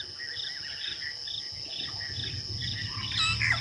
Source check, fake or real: real